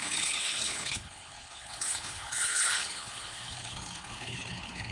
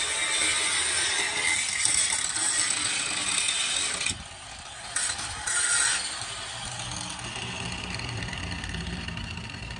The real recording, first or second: second